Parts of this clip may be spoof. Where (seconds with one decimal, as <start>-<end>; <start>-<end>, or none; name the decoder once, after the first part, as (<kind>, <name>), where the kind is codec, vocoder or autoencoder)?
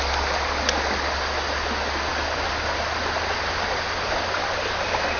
none